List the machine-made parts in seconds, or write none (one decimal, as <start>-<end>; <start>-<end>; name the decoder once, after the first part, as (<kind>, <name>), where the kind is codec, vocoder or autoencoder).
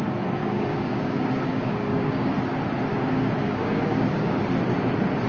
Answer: 0.4-2.3 (codec, DAC); 2.9-4.4